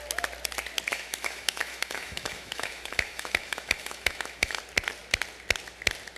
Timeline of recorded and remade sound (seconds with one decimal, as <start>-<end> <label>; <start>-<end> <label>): 0.0-0.9 recorded; 0.9-4.6 remade; 4.6-6.2 recorded